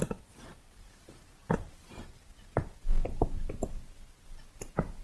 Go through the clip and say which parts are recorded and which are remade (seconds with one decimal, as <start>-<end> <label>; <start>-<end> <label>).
0.0-5.0 recorded